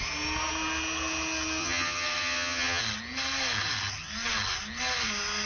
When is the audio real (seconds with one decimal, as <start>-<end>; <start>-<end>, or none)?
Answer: 0.0-1.6; 2.8-5.5